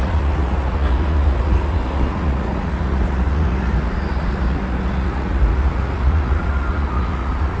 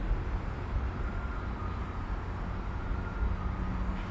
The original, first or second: second